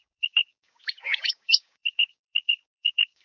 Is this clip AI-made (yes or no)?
yes